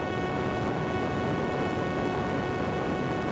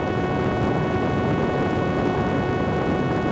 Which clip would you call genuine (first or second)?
second